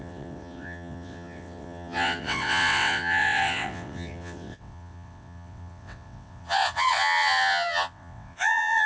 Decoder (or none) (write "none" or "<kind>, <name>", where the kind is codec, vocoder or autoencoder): vocoder, WaveNeXt